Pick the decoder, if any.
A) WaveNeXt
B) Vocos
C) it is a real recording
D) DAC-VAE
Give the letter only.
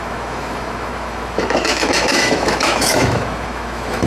D